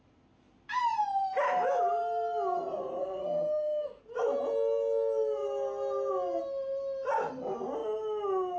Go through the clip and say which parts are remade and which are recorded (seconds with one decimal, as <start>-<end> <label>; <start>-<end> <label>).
0.0-3.0 recorded; 3.0-4.0 remade; 4.0-8.6 recorded